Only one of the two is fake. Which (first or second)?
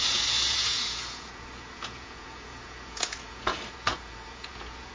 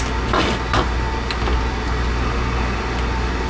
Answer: first